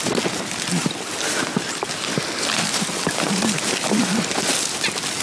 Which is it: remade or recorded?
recorded